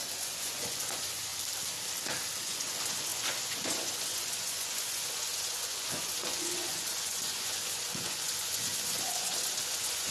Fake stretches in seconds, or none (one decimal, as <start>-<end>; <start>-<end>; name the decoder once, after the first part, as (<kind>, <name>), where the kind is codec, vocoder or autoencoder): 0.0-1.3 (vocoder, Vocos); 2.4-10.1